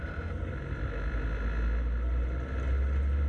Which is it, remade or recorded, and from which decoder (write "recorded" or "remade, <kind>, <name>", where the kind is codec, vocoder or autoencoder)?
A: recorded